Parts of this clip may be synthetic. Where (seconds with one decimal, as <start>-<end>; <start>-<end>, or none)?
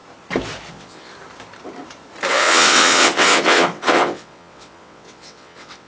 0.7-1.1; 2.3-5.9